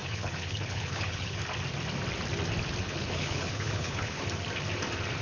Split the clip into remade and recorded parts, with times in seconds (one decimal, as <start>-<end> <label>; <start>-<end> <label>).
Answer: 0.0-1.4 remade; 1.4-2.8 recorded; 2.8-4.2 remade; 4.2-5.2 recorded